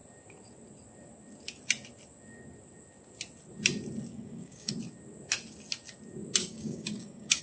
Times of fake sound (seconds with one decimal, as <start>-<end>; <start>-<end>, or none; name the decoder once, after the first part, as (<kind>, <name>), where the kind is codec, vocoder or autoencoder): 4.1-4.7 (codec, DAC); 6.4-7.4